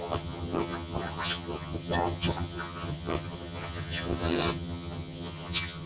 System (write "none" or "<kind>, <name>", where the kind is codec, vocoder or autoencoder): vocoder, HiFi-GAN